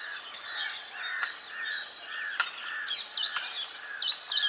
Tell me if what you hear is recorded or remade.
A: recorded